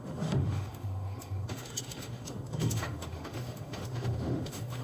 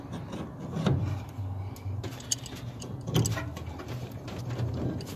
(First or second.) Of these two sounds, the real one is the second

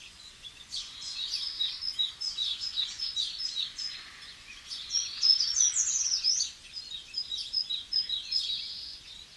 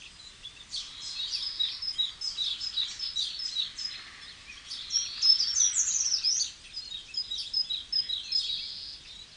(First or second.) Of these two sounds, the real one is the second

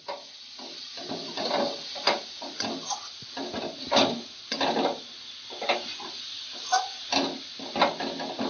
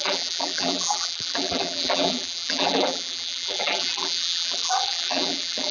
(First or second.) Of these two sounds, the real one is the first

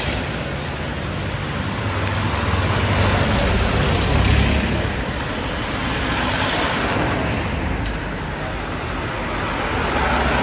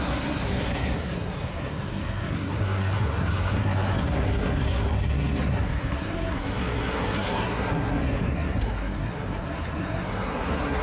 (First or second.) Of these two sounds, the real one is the first